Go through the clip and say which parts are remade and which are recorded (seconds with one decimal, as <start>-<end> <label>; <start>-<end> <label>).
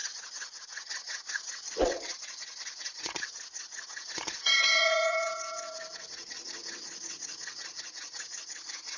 0.0-9.0 remade